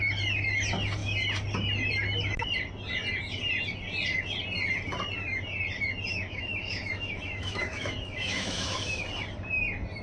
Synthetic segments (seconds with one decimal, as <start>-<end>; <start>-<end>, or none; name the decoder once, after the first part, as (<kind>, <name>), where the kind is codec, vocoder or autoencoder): 6.1-9.0 (autoencoder, DAC-VAE)